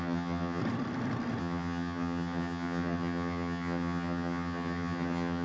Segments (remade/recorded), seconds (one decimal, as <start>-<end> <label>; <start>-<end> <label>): 0.0-0.6 remade; 0.6-1.4 recorded; 1.4-5.4 remade